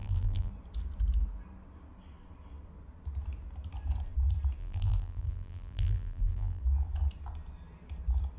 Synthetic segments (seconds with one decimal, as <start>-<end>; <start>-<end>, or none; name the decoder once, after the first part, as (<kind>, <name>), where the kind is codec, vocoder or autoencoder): 0.0-0.5 (vocoder, BigVGAN v2); 4.6-6.6